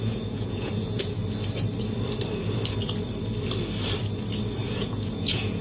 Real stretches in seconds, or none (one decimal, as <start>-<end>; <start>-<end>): 1.2-4.6